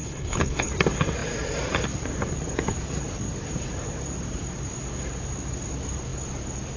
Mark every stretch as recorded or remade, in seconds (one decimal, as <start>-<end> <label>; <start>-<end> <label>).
0.0-0.7 remade; 0.7-6.8 recorded